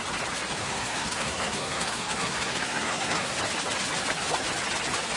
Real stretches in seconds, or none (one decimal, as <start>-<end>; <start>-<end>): 0.0-0.6; 3.4-5.2